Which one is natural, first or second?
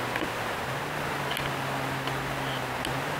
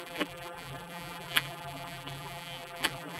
first